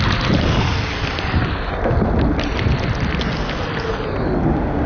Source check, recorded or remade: recorded